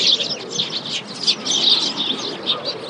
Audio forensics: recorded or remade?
recorded